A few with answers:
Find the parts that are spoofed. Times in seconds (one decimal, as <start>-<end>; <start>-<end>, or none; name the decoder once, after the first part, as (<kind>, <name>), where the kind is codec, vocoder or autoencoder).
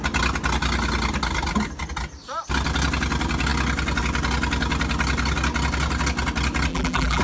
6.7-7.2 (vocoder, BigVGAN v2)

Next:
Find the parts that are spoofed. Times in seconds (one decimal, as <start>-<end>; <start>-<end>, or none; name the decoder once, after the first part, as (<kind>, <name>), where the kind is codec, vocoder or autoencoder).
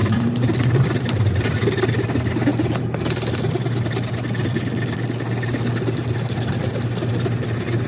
0.0-2.1 (vocoder, BigVGAN v2); 2.5-3.8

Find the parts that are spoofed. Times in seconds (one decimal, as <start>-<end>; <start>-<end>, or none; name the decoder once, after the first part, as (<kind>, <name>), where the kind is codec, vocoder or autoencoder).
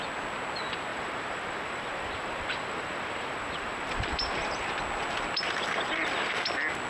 0.9-4.7 (vocoder, BigVGAN v2)